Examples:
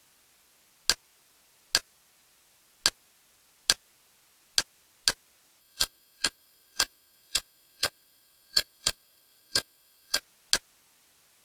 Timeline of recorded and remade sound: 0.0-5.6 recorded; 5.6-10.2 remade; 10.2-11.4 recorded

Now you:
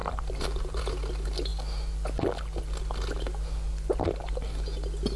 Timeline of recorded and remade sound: 0.0-0.8 remade; 0.8-5.2 recorded

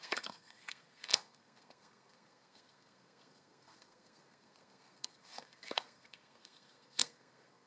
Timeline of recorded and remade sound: 0.0-7.7 remade